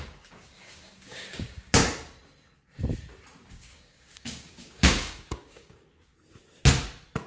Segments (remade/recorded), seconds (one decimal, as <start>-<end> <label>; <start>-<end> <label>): 0.0-1.8 remade; 1.8-3.5 recorded; 3.5-6.1 remade; 6.1-7.3 recorded